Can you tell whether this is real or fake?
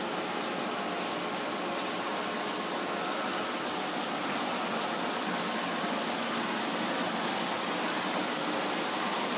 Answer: real